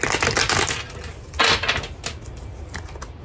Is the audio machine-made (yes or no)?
no